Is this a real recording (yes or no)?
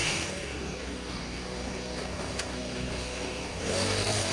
no